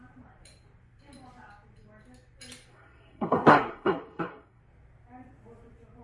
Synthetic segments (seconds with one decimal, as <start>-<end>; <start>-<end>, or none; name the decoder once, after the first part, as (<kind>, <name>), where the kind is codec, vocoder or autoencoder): 2.7-4.6 (codec, SNAC)